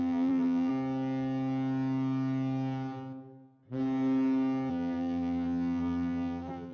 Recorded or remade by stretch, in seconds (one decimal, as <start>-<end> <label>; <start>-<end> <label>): 0.0-0.7 remade; 0.7-4.7 recorded; 4.7-6.7 remade